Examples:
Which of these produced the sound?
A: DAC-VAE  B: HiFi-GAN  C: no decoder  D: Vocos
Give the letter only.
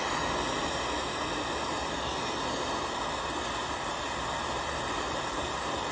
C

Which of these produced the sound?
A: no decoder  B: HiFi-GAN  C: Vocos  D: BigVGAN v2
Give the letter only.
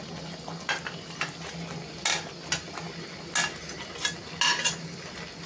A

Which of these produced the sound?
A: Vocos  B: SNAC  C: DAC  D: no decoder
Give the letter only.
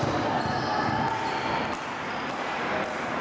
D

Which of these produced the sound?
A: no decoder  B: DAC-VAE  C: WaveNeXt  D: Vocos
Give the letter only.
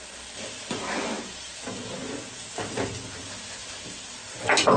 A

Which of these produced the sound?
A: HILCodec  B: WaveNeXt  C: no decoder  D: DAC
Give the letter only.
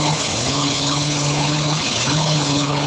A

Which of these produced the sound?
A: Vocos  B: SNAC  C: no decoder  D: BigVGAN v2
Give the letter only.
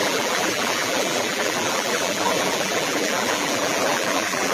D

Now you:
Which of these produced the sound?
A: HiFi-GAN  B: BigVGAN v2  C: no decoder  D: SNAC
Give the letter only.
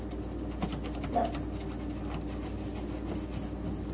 C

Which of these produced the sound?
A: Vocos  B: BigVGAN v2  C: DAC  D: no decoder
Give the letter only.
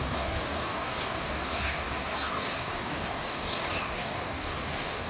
C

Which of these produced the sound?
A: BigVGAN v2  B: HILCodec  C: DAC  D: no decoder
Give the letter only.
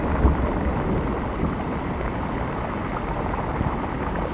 D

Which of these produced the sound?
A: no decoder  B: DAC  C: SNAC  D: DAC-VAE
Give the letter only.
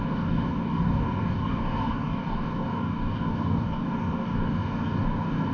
B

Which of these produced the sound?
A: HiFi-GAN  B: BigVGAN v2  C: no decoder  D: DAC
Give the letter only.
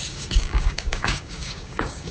D